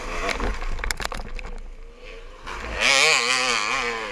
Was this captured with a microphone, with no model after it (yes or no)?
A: yes